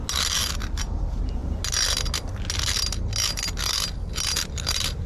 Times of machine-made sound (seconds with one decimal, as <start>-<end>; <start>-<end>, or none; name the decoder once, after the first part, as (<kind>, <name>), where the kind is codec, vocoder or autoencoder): none